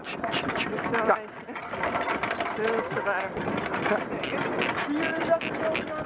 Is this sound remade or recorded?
recorded